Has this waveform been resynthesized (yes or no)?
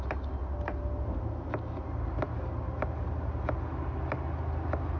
no